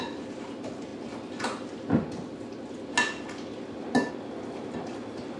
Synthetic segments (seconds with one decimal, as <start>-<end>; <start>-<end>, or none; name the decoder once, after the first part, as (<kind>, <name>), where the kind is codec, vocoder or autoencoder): none